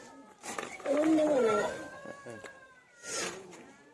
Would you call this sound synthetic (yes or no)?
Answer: yes